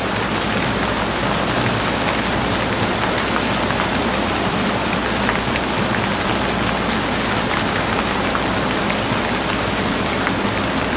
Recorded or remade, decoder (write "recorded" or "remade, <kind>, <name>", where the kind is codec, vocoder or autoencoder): recorded